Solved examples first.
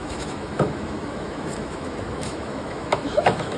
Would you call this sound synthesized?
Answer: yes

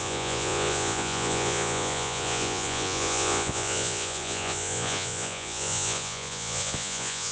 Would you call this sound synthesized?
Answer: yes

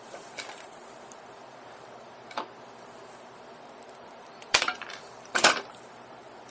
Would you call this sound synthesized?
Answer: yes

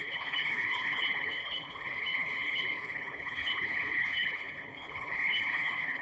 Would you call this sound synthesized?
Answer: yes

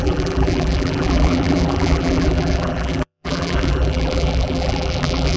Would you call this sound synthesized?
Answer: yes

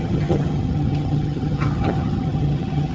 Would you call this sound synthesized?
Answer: yes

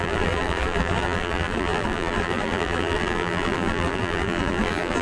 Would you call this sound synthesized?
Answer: yes